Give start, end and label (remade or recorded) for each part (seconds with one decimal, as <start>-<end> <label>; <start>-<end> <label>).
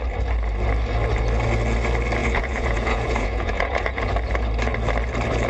0.0-2.2 recorded; 2.2-4.1 remade; 4.1-5.5 recorded